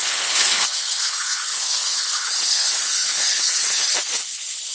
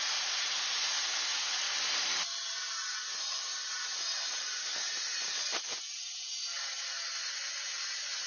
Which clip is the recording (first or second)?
second